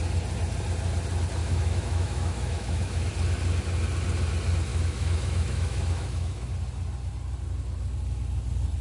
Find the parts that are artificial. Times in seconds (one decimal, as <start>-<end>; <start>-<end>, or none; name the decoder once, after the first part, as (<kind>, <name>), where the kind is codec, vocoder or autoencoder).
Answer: 1.4-3.1 (autoencoder, DAC-VAE); 4.7-6.5